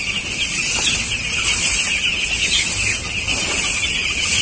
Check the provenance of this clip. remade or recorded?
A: recorded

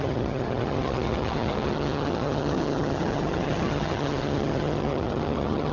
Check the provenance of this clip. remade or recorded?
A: remade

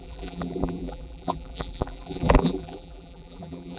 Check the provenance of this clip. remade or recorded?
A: remade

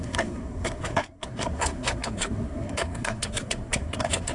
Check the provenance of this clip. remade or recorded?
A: remade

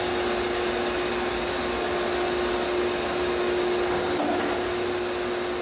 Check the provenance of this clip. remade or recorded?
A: recorded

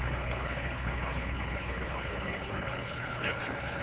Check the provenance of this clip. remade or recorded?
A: remade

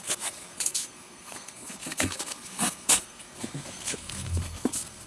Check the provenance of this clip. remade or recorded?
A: remade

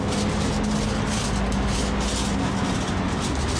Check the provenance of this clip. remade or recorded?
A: recorded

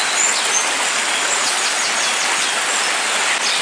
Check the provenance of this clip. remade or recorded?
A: recorded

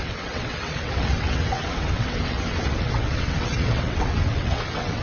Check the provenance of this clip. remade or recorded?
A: remade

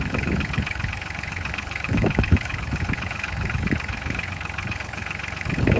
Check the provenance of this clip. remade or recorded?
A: remade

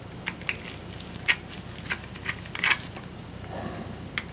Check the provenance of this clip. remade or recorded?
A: recorded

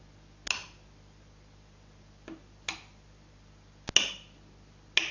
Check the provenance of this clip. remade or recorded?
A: recorded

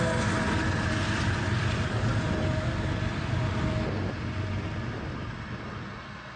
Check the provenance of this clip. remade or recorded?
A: recorded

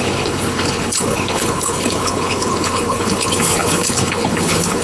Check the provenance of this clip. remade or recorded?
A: remade